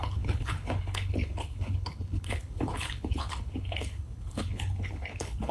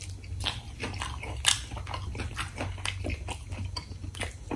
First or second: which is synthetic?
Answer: first